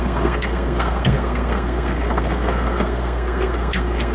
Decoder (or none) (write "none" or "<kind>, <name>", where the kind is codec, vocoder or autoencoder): codec, SNAC